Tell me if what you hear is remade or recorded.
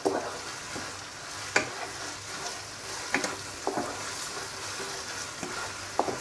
recorded